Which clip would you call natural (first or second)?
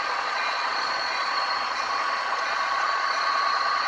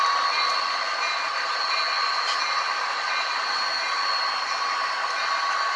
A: second